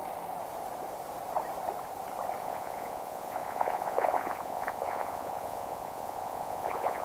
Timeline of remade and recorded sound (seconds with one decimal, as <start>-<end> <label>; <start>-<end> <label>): 0.0-2.4 recorded; 2.4-7.0 remade